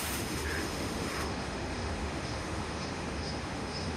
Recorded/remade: remade